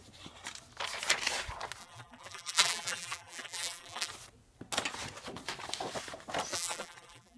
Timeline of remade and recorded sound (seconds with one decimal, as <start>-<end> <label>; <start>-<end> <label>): 0.0-1.8 recorded; 1.8-4.1 remade; 4.1-6.5 recorded; 6.5-7.4 remade